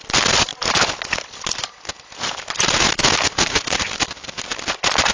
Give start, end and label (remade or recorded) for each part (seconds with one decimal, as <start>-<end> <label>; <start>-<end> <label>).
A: 0.0-5.1 recorded